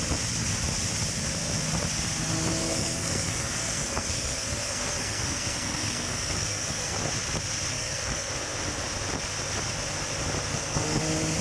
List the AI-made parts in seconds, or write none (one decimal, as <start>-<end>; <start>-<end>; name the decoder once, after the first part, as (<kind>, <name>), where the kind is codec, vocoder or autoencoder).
2.6-7.1 (codec, SNAC); 7.7-8.3; 10.5-11.0